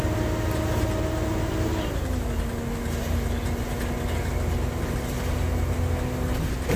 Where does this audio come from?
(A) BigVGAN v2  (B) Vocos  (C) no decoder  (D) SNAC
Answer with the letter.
C